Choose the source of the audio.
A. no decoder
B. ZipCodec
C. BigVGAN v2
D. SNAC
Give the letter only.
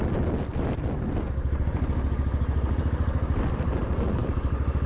A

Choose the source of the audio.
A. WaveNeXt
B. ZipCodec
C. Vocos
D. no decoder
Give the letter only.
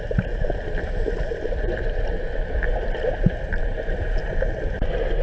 D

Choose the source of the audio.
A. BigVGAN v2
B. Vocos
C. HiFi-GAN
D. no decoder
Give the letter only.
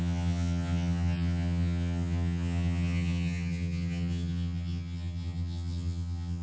C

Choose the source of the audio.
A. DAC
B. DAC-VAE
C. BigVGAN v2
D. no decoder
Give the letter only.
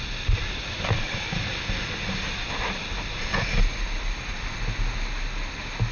D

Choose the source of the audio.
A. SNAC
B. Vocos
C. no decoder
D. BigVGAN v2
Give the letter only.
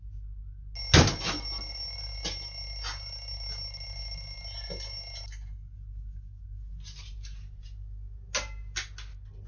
C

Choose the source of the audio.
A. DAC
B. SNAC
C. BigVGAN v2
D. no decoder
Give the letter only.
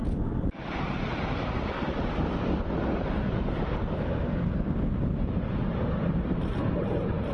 D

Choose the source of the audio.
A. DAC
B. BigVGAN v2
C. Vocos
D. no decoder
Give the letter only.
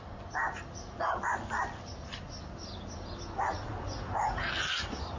D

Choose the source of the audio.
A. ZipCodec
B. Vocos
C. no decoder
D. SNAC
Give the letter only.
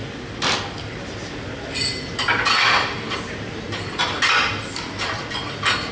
C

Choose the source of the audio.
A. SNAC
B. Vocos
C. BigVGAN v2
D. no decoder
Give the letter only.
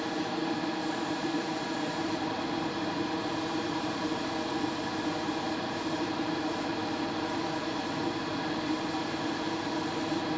C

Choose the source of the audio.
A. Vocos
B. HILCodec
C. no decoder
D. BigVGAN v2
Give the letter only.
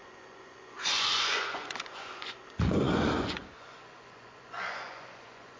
A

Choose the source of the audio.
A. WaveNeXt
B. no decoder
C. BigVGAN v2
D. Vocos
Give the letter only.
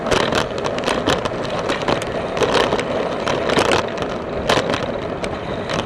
B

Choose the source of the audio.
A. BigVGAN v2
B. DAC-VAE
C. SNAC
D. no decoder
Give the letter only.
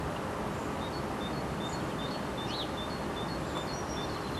D